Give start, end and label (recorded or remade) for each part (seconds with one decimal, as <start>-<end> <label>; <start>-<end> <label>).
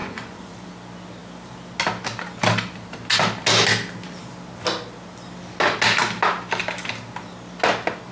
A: 0.0-0.7 remade; 0.7-8.1 recorded